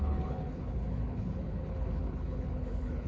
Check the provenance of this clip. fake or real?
fake